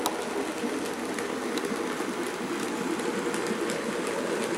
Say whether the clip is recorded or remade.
recorded